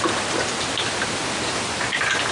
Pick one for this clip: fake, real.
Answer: real